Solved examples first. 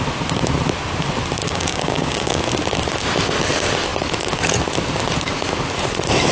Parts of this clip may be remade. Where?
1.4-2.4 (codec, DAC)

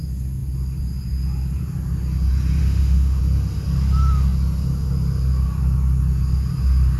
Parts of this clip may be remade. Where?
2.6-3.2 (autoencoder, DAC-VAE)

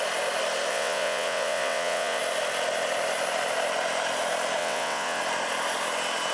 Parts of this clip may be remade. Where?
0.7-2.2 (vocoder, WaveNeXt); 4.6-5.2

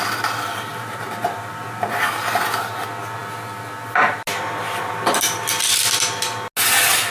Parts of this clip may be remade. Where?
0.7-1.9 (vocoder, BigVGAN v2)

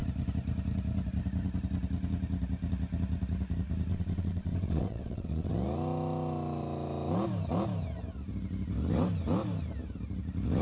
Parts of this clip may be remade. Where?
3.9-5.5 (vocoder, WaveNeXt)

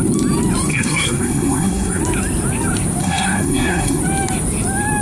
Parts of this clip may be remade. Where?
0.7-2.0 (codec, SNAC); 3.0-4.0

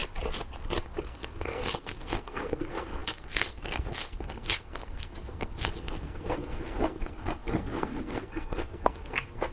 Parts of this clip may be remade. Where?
1.0-9.5 (codec, SNAC)